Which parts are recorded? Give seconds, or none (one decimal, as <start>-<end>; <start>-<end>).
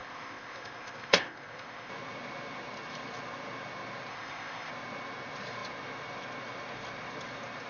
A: 1.9-4.1; 4.7-7.7